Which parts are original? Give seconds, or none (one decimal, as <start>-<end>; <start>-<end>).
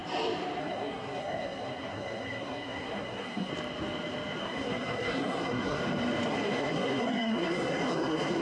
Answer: 0.0-0.6; 3.5-4.4; 5.8-6.3